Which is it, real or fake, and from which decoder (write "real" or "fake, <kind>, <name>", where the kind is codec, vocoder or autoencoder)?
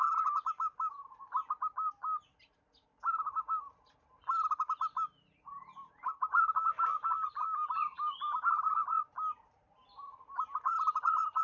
real